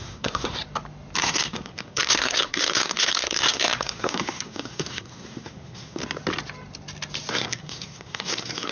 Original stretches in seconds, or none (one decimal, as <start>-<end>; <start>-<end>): 0.6-1.2; 6.0-7.3